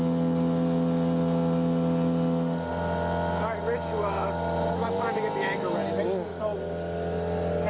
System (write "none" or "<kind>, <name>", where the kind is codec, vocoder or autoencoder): none